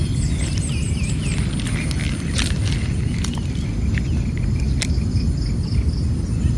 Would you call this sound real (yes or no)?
yes